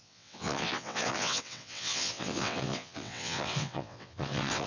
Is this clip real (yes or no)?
no